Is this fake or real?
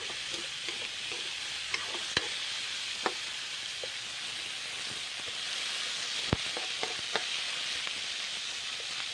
real